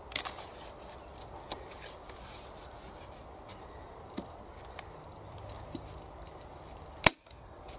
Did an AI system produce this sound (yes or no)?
yes